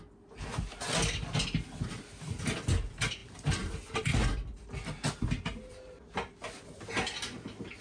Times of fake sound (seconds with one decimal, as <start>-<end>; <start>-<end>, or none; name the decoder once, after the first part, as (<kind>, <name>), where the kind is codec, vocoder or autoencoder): none